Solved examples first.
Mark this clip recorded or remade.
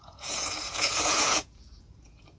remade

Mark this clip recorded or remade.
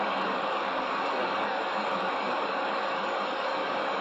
remade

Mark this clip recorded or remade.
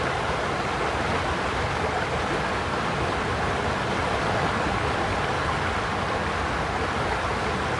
recorded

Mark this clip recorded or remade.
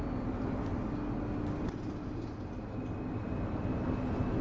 recorded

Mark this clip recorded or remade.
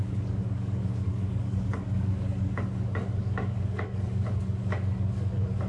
remade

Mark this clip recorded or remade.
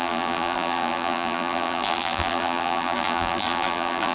remade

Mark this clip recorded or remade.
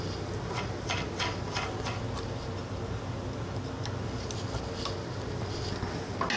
recorded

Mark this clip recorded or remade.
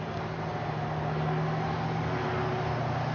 recorded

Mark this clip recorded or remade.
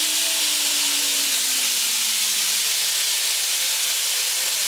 recorded